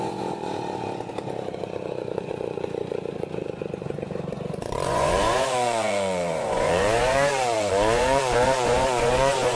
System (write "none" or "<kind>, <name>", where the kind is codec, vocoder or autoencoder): vocoder, Vocos